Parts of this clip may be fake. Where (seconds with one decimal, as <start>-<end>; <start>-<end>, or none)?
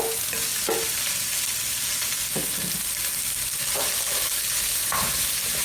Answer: none